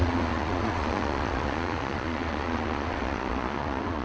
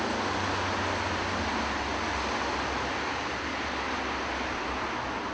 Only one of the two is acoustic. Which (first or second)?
second